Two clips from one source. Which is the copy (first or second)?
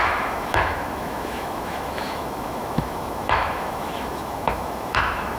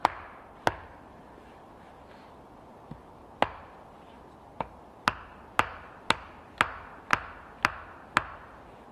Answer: first